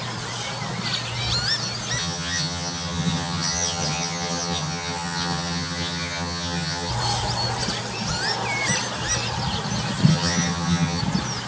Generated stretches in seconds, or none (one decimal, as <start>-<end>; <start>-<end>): 2.0-6.9; 10.1-11.0